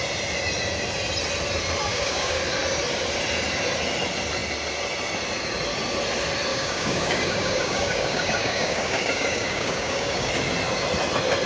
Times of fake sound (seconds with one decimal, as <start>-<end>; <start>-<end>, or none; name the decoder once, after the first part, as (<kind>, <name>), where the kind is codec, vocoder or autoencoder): 1.9-2.4 (codec, DAC); 6.5-10.3